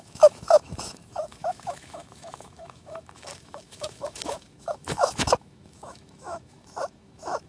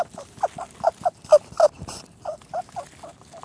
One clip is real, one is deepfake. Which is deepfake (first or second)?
first